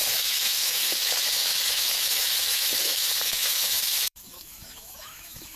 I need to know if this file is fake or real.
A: fake